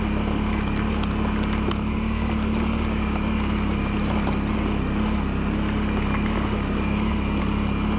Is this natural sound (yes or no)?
yes